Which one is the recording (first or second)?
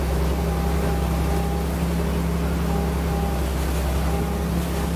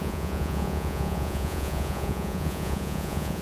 first